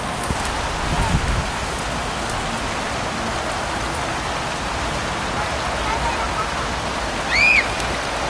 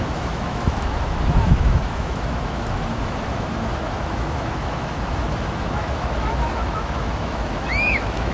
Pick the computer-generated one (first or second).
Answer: second